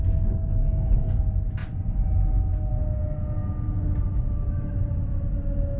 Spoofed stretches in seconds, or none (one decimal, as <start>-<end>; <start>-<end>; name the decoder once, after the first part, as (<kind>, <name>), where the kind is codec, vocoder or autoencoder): 0.6-1.2 (codec, SNAC)